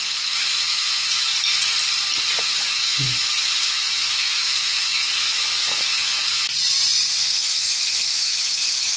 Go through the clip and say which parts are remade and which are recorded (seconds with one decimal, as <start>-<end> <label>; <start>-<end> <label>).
0.0-1.3 remade; 1.3-2.4 recorded; 2.4-6.1 remade; 6.1-7.3 recorded; 7.3-9.0 remade